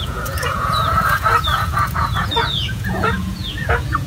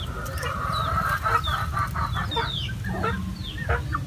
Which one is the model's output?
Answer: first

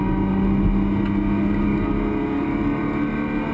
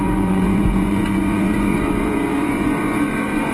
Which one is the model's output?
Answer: second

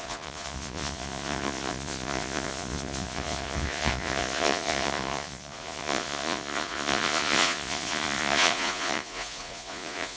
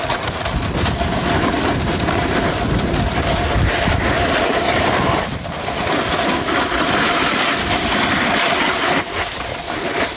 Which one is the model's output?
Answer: first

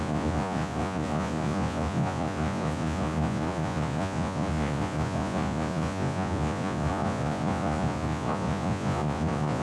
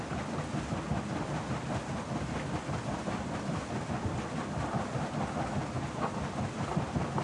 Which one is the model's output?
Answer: first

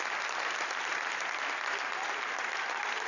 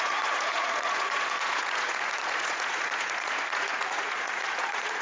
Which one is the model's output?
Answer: second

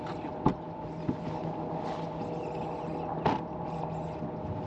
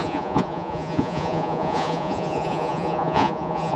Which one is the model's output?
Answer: second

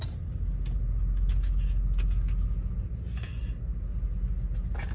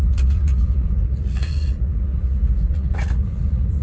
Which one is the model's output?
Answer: second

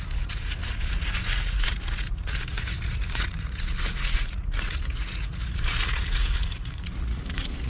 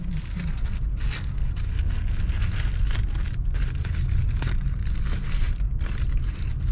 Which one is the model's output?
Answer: first